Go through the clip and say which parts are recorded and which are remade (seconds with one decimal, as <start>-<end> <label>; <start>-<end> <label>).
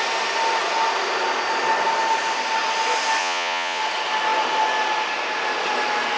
0.0-3.2 recorded; 3.2-3.8 remade; 3.8-6.2 recorded